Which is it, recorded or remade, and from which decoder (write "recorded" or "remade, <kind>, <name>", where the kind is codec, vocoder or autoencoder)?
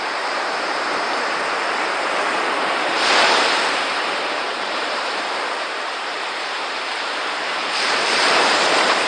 remade, vocoder, BigVGAN v2